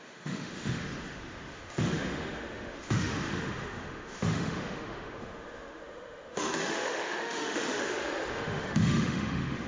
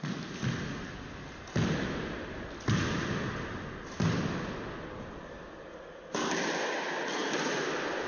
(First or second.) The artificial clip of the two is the first